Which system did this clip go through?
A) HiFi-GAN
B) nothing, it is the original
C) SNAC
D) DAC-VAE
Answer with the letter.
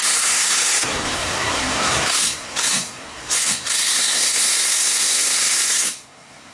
C